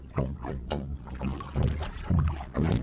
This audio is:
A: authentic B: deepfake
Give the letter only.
B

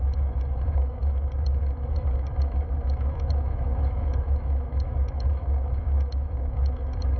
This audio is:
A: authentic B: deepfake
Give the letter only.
B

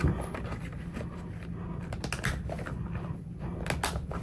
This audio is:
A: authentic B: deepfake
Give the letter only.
A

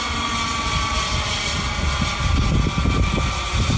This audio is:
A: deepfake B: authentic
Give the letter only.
B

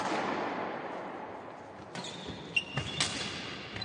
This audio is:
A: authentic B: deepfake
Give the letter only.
A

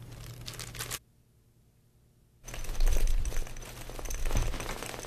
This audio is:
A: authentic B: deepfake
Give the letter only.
A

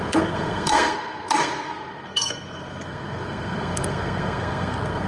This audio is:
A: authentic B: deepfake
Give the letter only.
B